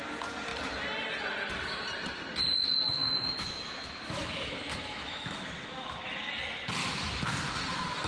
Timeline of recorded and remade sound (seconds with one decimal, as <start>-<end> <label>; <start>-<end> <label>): 0.0-3.0 recorded; 3.0-6.3 remade; 6.3-6.8 recorded; 6.8-7.3 remade; 7.3-8.1 recorded